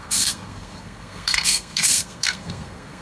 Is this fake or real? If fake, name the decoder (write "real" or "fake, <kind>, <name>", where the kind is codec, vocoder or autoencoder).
fake, codec, SNAC